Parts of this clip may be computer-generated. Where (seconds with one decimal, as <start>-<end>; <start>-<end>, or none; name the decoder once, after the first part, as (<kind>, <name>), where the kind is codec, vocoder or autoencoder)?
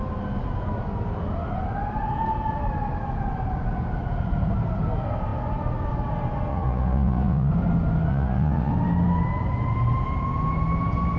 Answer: 6.5-7.5 (vocoder, Vocos); 8.1-8.7